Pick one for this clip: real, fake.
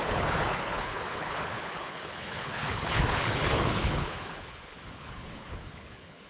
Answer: fake